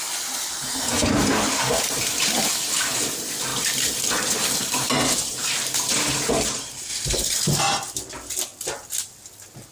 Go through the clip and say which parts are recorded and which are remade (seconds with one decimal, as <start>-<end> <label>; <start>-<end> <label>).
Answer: 0.0-9.7 recorded